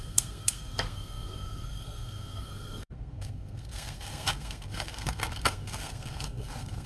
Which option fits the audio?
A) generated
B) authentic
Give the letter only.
A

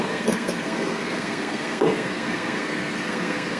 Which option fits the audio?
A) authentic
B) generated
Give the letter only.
B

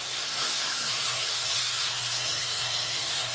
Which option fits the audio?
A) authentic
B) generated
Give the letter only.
B